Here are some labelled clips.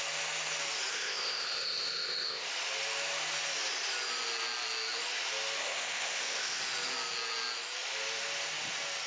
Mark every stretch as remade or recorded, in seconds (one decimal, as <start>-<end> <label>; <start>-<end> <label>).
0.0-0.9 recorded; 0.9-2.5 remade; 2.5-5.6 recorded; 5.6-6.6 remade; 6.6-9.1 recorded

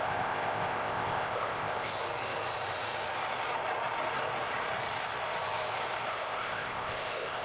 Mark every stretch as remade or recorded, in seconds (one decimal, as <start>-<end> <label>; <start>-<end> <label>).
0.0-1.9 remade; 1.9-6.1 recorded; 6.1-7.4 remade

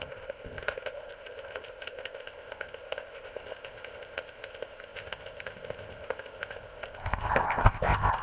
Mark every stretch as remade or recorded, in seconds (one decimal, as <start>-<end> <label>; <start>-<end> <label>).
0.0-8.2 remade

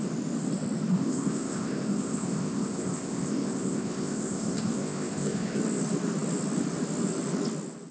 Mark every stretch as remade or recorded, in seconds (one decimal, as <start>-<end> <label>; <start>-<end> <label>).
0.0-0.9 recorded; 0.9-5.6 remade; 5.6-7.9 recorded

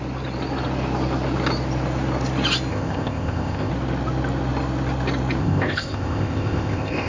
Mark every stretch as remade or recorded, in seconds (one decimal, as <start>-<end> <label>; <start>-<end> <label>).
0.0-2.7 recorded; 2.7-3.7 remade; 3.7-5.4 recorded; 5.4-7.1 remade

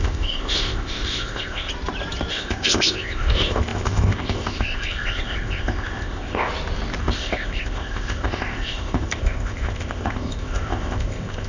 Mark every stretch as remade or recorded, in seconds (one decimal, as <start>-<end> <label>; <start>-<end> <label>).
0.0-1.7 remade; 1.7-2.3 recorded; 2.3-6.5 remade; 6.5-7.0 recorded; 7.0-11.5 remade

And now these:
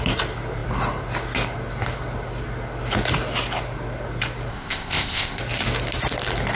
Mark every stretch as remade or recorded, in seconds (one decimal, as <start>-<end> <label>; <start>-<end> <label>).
0.0-4.5 recorded; 4.5-5.4 remade; 5.4-6.6 recorded